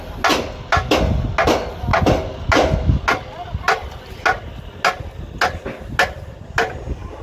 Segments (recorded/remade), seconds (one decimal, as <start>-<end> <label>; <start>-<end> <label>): 0.0-7.2 recorded